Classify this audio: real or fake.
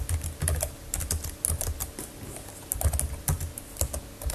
real